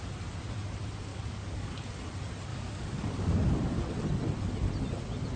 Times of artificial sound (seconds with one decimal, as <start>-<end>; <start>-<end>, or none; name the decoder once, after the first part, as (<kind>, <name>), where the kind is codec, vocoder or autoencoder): 1.1-1.9 (codec, DAC); 2.5-3.3